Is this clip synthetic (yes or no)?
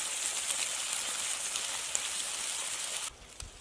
no